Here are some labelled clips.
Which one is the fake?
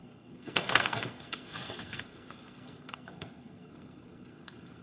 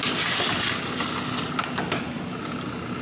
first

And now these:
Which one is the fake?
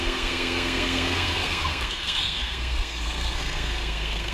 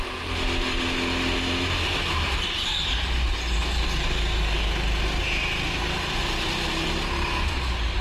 first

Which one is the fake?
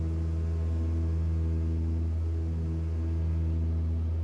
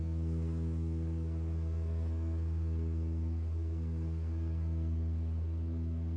second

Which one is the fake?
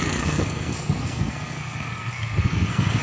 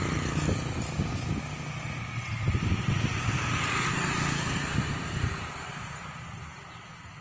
first